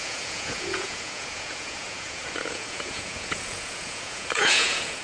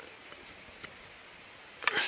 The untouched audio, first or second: second